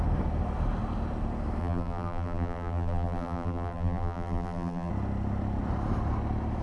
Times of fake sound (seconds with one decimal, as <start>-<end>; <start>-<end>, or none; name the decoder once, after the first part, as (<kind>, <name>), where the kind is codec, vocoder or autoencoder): 1.6-4.9 (vocoder, BigVGAN v2)